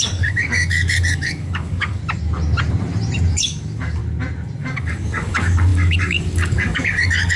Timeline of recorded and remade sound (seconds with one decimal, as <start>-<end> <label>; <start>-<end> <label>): 0.0-2.0 remade; 2.0-3.3 recorded; 3.3-4.0 remade; 4.0-4.6 recorded; 4.6-7.4 remade